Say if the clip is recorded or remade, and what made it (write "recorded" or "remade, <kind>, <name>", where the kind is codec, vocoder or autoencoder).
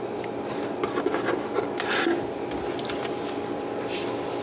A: recorded